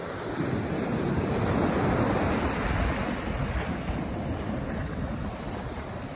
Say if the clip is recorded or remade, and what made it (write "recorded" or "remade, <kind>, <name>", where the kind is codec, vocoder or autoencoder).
recorded